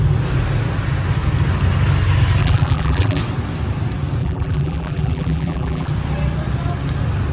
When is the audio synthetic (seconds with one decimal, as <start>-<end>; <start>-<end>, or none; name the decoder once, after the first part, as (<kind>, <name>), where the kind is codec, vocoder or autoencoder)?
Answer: 2.4-3.2 (vocoder, BigVGAN v2); 4.2-5.9

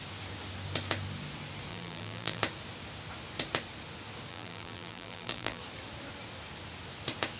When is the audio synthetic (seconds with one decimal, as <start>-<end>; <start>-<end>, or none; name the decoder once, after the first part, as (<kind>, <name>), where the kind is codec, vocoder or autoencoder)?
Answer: 1.7-2.4 (vocoder, BigVGAN v2); 4.3-5.6

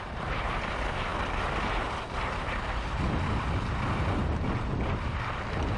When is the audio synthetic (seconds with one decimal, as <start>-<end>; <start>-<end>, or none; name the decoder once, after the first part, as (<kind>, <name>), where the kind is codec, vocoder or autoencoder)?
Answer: none

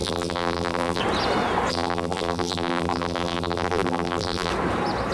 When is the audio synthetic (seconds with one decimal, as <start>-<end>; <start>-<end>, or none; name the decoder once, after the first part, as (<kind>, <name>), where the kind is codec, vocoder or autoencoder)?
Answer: 0.0-1.0 (vocoder, BigVGAN v2); 1.7-4.5

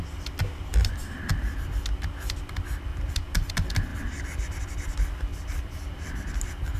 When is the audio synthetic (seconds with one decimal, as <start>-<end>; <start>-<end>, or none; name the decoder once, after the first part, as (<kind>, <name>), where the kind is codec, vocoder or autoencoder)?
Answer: 2.9-3.5 (vocoder, BigVGAN v2); 5.3-6.3